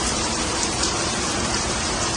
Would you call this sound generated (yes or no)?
yes